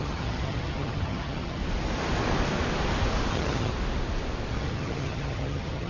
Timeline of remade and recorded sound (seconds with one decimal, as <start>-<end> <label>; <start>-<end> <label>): 0.0-1.6 remade; 1.6-3.3 recorded; 3.3-3.7 remade; 3.7-4.5 recorded; 4.5-5.9 remade